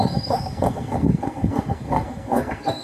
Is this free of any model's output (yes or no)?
no